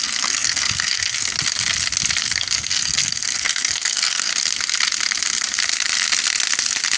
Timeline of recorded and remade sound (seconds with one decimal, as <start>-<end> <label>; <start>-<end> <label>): 0.0-1.3 remade; 1.3-2.2 recorded; 2.2-4.3 remade; 4.3-7.0 recorded